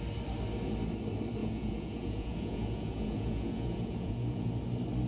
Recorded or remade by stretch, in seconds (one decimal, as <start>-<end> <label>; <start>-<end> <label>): 0.0-1.4 recorded; 1.4-4.5 remade; 4.5-5.1 recorded